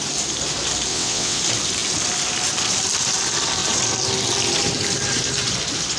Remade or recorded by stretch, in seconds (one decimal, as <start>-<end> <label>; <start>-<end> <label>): 0.0-0.9 recorded; 0.9-1.4 remade; 1.4-6.0 recorded